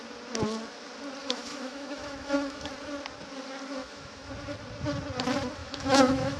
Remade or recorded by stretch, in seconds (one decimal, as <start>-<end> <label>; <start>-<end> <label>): 0.0-1.2 recorded; 1.2-2.7 remade; 2.7-3.8 recorded; 3.8-4.3 remade; 4.3-5.6 recorded; 5.6-6.4 remade